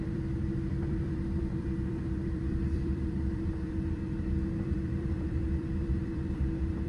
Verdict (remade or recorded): remade